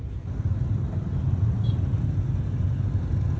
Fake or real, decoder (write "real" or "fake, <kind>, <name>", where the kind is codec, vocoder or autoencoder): real